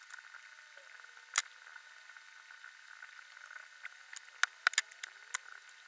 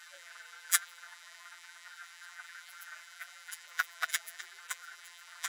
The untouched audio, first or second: first